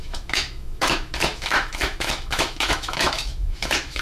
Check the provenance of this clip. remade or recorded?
remade